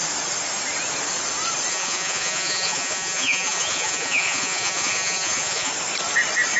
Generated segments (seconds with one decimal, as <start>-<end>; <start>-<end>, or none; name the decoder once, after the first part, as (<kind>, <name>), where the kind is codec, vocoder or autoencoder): 1.7-5.7 (vocoder, Vocos)